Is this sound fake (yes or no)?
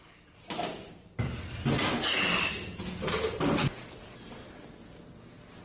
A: no